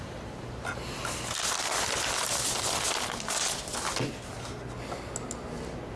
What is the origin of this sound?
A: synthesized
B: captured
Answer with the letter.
B